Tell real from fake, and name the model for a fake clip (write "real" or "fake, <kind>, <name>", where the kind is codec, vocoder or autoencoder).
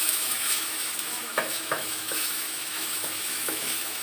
fake, autoencoder, DAC-VAE